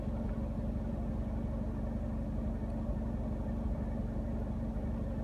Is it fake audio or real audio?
real